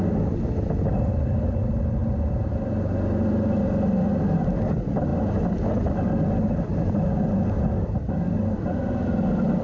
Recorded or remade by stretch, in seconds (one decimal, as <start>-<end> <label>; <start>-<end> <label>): 0.0-9.6 recorded